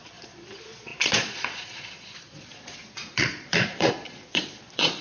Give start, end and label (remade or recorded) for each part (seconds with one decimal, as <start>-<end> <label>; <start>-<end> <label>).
0.0-5.0 remade